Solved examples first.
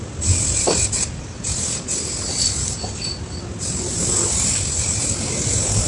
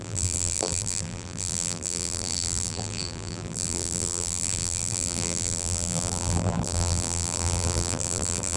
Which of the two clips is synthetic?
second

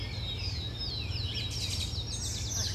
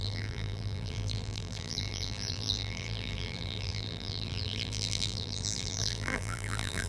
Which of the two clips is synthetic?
second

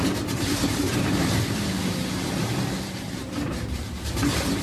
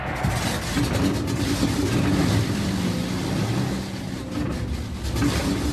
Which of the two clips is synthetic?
first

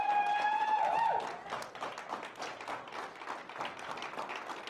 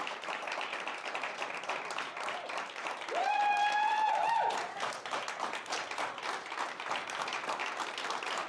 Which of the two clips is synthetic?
second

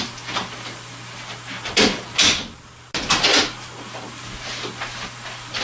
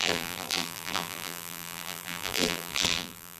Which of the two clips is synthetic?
second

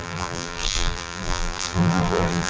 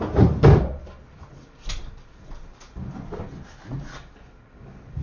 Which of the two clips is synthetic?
first